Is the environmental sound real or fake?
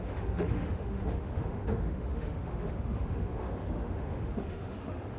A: fake